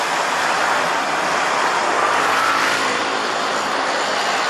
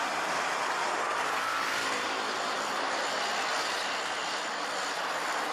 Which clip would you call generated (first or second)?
first